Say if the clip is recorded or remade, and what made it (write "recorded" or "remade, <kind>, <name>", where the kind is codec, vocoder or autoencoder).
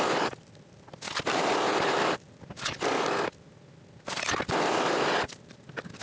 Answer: recorded